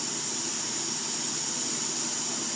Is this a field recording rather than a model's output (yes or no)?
yes